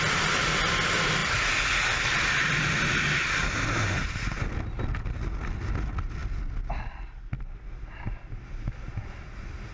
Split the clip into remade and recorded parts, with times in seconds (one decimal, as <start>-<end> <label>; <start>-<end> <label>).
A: 0.0-9.7 recorded